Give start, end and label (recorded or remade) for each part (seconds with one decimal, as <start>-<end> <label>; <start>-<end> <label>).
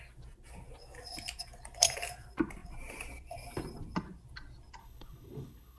0.0-4.8 recorded; 4.8-5.8 remade